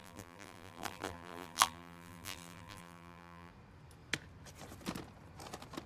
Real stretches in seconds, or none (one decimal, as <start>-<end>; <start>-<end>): 3.5-5.9

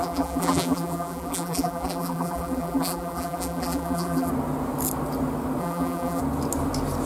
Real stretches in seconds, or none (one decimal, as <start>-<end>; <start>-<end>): 4.3-5.6; 6.2-7.1